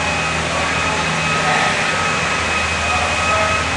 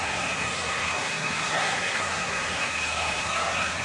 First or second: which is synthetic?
second